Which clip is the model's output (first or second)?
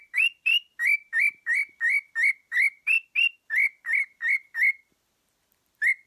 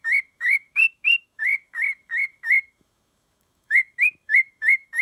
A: second